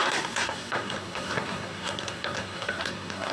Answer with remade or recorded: remade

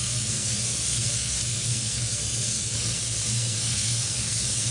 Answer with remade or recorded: remade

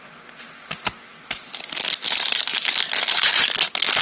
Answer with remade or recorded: recorded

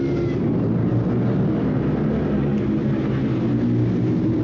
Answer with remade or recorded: recorded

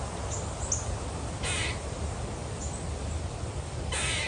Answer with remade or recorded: recorded